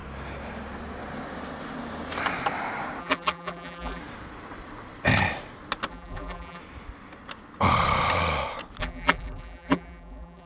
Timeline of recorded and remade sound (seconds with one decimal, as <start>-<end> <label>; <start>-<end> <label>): 0.0-3.0 recorded; 3.0-4.0 remade; 4.0-5.9 recorded; 5.9-6.6 remade; 6.6-8.8 recorded; 8.8-10.5 remade